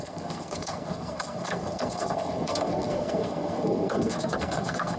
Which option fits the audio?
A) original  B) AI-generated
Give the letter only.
B